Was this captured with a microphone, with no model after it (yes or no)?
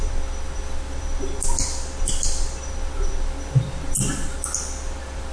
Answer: yes